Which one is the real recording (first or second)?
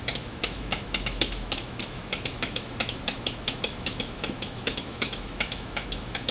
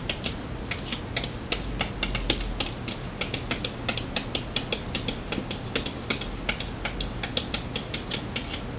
second